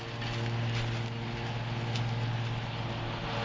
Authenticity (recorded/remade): recorded